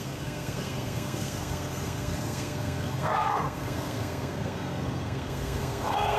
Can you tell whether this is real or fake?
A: fake